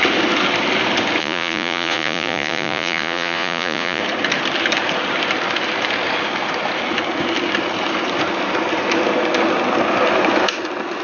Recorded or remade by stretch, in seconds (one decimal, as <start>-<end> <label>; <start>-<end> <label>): 0.0-1.2 recorded; 1.2-4.0 remade; 4.0-11.0 recorded